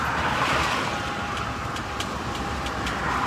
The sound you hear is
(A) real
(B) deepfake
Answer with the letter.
A